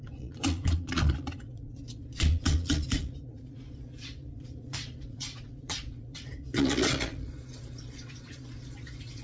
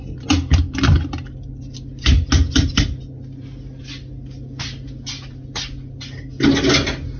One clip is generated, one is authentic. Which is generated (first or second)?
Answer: first